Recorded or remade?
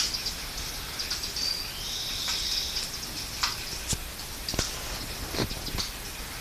recorded